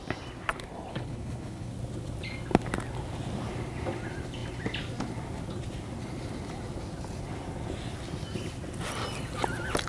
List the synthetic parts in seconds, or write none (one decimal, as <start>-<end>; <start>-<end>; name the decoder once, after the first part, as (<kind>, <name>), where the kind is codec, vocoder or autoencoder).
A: 0.9-1.7 (codec, HILCodec)